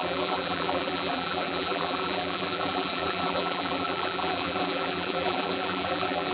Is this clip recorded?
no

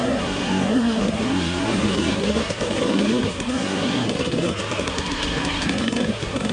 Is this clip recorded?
no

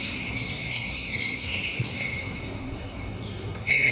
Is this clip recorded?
no